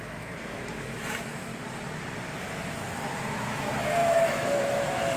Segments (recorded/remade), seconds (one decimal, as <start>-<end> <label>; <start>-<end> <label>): 0.0-1.5 remade; 1.5-3.4 recorded; 3.4-5.2 remade